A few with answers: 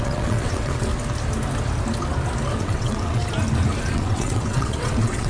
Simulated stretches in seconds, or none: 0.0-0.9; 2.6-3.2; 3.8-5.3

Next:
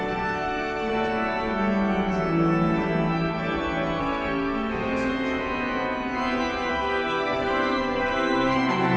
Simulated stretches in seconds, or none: 0.0-0.9; 4.0-5.1; 6.7-9.0

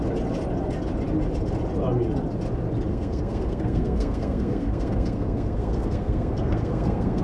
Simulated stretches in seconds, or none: 2.9-7.2

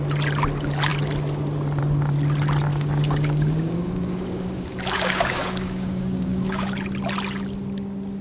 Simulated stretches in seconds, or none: 2.7-6.7

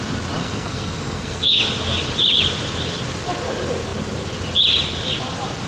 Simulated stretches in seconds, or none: 0.4-1.6

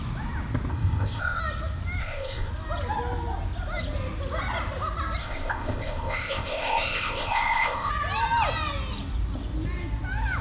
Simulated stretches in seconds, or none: 0.7-1.4; 2.0-2.5; 5.2-7.9